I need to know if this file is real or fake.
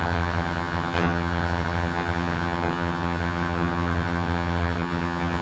fake